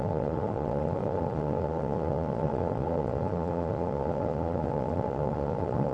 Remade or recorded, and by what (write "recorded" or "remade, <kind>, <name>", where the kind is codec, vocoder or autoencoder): remade, vocoder, Vocos